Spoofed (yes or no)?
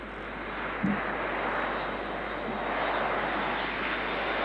no